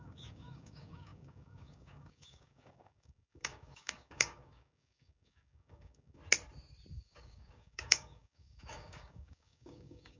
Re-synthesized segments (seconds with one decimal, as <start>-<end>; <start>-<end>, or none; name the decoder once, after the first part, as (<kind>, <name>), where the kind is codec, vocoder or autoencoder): 0.0-6.2 (codec, DAC); 6.9-10.2